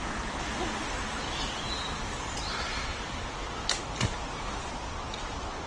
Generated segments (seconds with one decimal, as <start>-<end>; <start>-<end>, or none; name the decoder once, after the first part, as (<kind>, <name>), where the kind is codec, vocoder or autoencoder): none

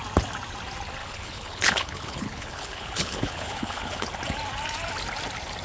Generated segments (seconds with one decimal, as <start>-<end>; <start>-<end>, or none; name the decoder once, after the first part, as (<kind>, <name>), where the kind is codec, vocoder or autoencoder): 1.0-4.1 (codec, HILCodec)

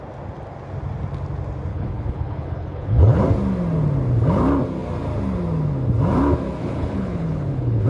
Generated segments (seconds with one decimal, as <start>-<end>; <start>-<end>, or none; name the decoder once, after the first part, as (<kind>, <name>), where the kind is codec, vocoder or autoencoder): 1.7-3.2 (codec, HILCodec); 6.6-7.9

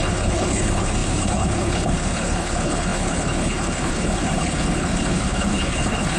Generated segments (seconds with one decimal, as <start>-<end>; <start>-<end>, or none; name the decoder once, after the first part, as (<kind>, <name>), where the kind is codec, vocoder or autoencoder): 0.0-6.2 (codec, HILCodec)

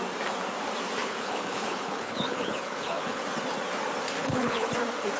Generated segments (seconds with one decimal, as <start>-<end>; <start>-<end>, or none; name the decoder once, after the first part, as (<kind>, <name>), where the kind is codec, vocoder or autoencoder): 1.0-3.2 (codec, HILCodec); 4.2-4.7

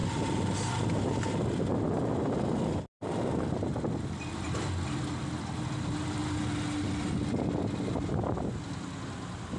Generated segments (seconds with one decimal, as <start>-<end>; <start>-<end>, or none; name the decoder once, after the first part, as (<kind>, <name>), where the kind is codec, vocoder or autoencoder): none

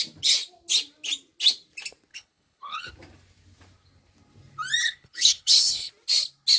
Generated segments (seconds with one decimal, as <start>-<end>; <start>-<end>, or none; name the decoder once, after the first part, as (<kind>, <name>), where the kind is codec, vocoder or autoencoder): 2.1-2.9 (codec, HILCodec); 4.8-5.9